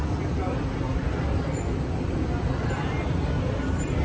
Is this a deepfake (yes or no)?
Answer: no